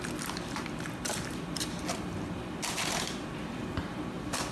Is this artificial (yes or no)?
yes